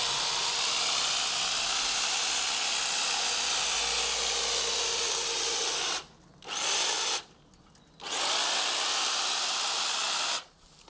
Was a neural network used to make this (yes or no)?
no